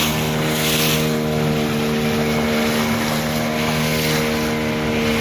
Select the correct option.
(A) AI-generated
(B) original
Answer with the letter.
B